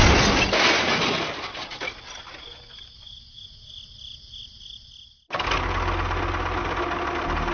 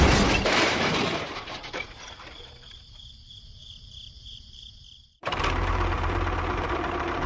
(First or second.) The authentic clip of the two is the first